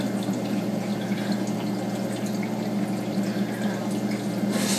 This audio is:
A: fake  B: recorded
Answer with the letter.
B